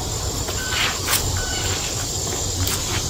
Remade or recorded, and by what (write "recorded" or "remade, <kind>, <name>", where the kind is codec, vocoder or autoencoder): recorded